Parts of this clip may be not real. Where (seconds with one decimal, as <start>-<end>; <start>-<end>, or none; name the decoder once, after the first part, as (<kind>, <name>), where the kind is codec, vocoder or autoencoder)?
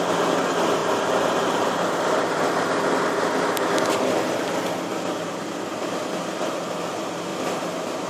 0.8-3.0 (vocoder, BigVGAN v2); 4.9-5.5